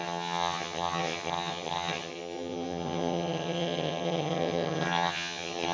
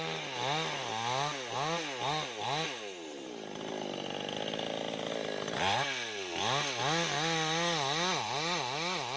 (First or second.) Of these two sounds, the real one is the second